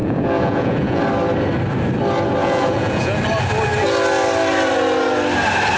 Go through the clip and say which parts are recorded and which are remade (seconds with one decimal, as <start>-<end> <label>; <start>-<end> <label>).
0.0-1.0 remade; 1.0-2.4 recorded; 2.4-3.2 remade; 3.2-5.8 recorded